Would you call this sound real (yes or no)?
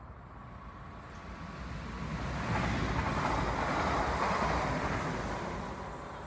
yes